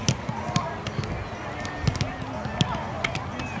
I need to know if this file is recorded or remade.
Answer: recorded